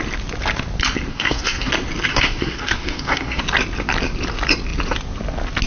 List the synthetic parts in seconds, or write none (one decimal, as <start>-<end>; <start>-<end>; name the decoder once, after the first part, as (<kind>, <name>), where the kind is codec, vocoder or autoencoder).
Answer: 1.1-1.7 (codec, SNAC); 2.1-3.4